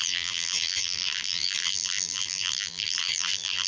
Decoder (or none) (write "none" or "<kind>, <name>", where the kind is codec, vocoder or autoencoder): vocoder, BigVGAN v2